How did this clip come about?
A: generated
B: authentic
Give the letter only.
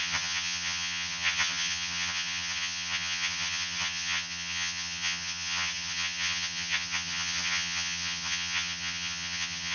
A